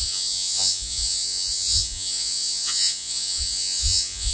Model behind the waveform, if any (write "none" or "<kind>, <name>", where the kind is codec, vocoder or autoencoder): vocoder, Vocos